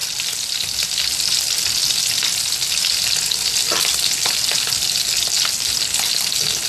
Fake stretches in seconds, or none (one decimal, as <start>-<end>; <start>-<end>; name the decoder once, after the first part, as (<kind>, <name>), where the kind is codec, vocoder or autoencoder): none